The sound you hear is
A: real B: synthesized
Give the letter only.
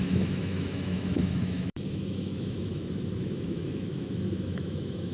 B